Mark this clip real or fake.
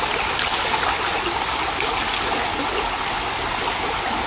real